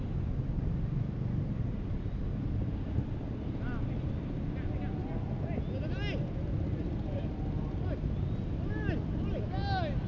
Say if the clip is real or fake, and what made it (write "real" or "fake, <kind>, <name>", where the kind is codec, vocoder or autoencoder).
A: real